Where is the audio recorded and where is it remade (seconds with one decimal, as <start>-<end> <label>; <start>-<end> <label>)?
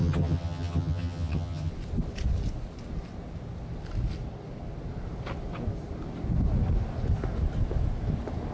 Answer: 0.0-1.7 remade; 1.7-8.5 recorded